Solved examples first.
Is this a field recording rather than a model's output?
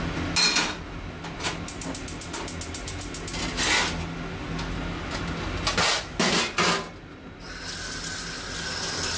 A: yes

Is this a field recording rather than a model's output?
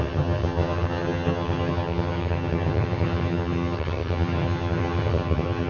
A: no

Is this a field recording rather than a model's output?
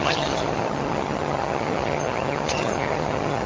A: no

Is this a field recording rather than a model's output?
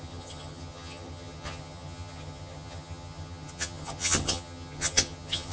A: no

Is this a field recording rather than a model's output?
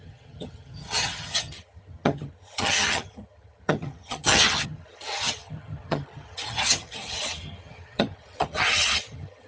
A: no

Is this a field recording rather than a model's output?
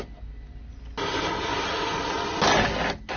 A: yes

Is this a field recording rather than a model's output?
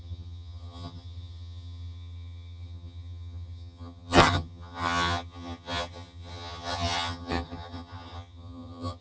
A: no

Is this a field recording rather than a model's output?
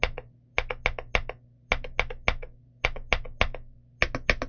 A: yes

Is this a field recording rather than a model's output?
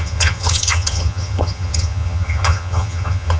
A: no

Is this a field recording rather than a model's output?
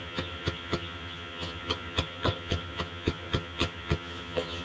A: no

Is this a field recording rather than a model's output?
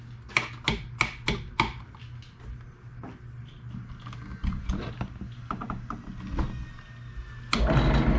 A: yes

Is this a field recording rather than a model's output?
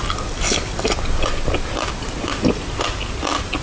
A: yes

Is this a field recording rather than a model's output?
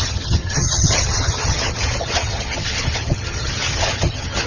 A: no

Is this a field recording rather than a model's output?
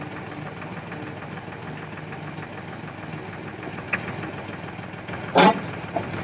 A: yes